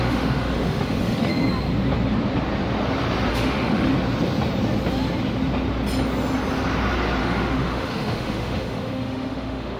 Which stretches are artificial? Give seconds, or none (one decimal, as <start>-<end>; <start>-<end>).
0.0-1.3; 3.3-3.9; 7.2-9.8